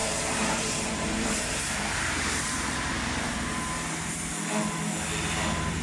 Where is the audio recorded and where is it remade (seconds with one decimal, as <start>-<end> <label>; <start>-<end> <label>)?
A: 0.0-2.9 remade; 2.9-5.8 recorded